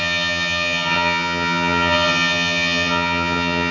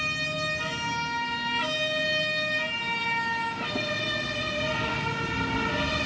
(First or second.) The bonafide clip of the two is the second